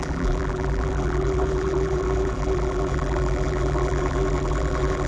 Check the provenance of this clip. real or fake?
fake